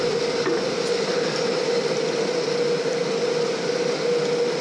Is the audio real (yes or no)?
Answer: yes